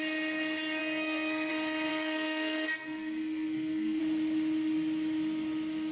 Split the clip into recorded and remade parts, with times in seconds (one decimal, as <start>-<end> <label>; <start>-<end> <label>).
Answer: 0.0-0.8 recorded; 0.8-1.5 remade; 1.5-1.9 recorded; 1.9-4.0 remade; 4.0-5.9 recorded